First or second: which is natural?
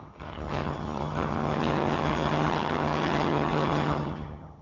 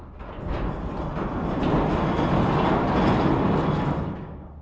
second